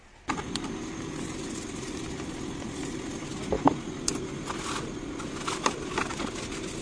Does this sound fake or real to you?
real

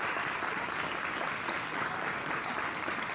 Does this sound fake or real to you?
real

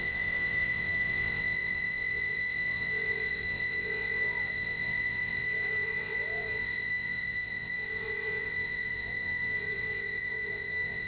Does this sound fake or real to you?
fake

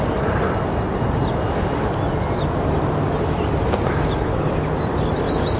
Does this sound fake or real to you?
real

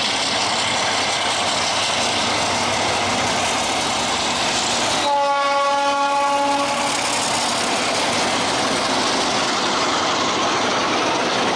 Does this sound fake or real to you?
real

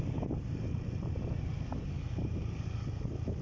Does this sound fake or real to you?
real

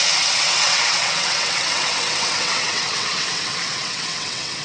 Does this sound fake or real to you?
fake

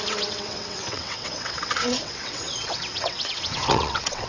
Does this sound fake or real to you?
fake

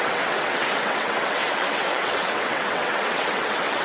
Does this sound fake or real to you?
fake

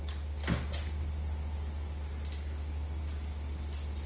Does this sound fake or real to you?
real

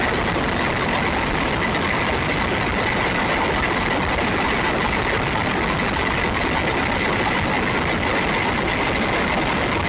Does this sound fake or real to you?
real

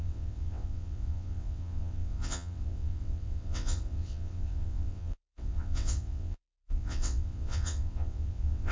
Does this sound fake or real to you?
fake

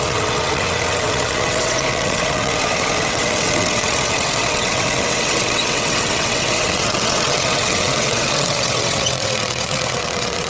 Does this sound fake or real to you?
fake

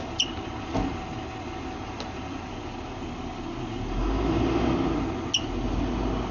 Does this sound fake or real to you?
real